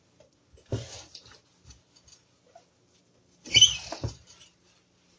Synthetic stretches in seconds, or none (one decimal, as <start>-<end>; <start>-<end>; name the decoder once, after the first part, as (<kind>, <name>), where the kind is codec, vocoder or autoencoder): none